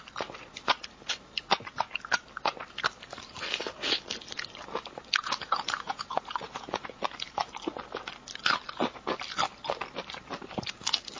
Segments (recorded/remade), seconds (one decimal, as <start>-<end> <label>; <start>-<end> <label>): 0.0-5.2 recorded; 5.2-7.0 remade; 7.0-11.2 recorded